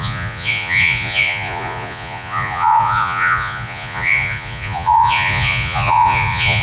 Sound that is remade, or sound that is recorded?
remade